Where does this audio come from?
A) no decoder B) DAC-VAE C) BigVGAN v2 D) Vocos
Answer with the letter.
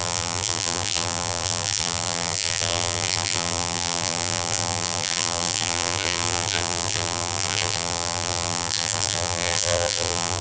C